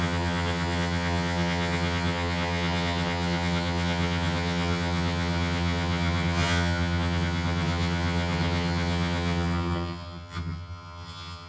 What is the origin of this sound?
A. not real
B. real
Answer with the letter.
A